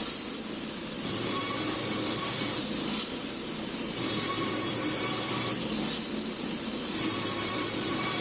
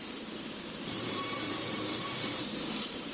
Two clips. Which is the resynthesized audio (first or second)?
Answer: second